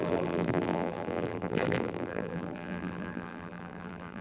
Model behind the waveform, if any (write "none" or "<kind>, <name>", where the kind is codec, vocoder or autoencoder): vocoder, BigVGAN v2